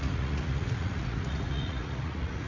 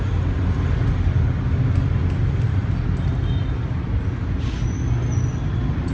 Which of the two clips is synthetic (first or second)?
first